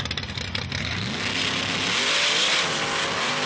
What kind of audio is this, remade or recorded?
recorded